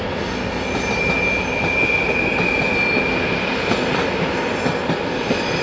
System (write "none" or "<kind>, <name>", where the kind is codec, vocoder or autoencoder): none